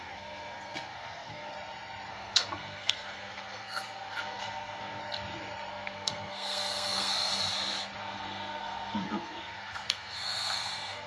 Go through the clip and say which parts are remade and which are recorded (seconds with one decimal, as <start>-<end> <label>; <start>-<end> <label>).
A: 0.0-1.5 remade; 1.5-2.1 recorded; 2.1-5.0 remade; 5.0-5.7 recorded; 5.7-7.3 remade; 7.3-8.0 recorded; 8.0-11.1 remade